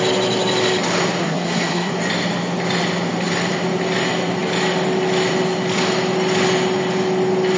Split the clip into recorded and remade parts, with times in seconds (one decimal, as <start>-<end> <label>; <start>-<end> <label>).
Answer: 0.0-1.2 recorded; 1.2-1.9 remade; 1.9-7.6 recorded